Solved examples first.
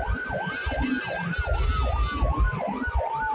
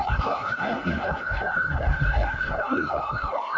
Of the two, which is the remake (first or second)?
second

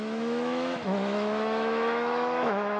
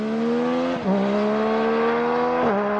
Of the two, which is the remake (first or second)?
first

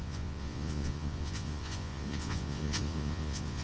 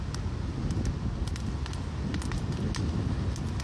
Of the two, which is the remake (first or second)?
first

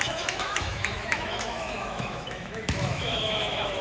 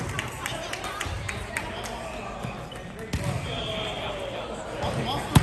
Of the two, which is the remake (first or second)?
first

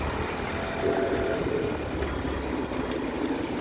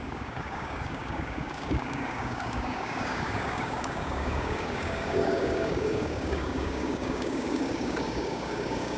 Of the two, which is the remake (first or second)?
second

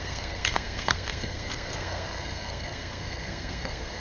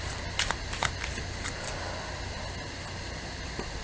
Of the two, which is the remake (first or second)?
first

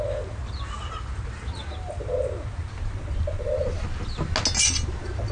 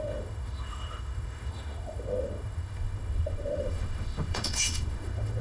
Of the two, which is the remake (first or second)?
second